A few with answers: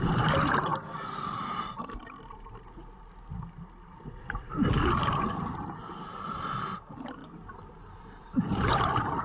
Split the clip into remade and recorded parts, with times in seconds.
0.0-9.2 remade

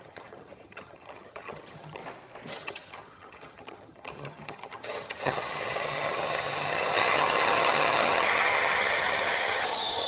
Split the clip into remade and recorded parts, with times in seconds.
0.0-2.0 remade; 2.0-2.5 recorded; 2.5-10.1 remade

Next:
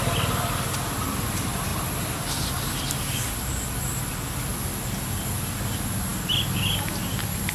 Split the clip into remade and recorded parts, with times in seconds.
0.0-7.5 recorded

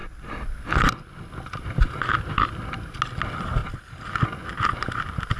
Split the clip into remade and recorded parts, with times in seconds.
0.0-5.4 recorded